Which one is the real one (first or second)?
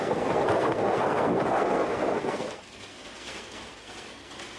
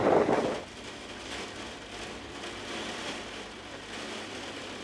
second